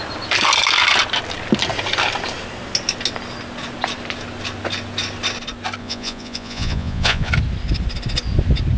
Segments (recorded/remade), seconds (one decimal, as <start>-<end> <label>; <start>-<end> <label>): 0.0-5.8 recorded; 5.8-7.3 remade; 7.3-8.8 recorded